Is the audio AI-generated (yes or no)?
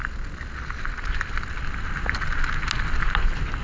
no